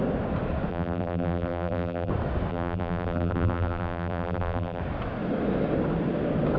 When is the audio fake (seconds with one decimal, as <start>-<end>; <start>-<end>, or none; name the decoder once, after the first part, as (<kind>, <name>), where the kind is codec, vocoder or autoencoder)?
0.7-2.1 (vocoder, BigVGAN v2); 2.5-4.8